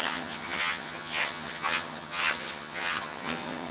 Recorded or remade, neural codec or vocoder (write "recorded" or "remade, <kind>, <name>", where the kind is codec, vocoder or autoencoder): remade, vocoder, HiFi-GAN